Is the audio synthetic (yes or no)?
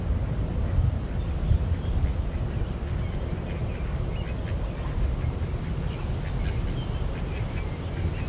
no